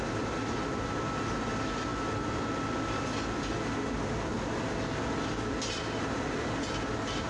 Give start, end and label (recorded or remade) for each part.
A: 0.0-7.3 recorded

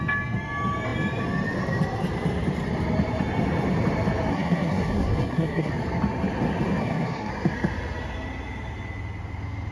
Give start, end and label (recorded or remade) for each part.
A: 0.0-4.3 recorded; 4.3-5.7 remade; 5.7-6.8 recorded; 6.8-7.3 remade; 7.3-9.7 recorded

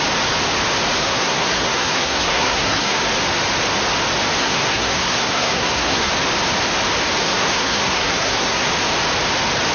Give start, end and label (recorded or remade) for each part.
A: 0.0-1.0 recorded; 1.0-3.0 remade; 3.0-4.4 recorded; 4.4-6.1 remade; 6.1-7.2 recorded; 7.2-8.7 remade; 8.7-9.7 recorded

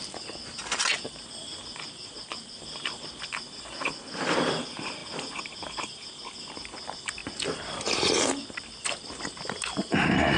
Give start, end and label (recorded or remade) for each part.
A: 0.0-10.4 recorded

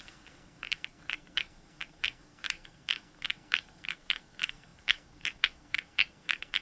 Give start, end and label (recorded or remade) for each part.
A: 0.0-6.6 remade